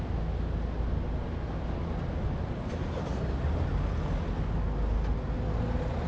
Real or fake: real